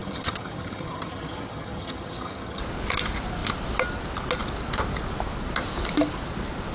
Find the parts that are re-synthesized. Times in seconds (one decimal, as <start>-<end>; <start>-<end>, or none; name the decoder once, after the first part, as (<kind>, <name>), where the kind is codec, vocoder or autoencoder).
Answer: 0.0-2.6 (vocoder, HiFi-GAN)